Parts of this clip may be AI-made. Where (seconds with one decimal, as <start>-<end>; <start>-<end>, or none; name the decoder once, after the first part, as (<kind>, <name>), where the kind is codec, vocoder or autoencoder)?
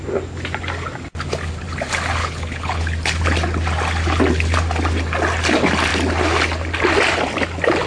2.2-2.8 (codec, HILCodec)